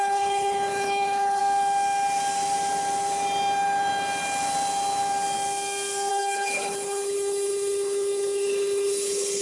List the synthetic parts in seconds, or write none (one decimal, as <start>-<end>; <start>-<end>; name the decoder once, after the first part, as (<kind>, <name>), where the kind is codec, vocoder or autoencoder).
0.0-1.4 (codec, HILCodec); 6.1-9.4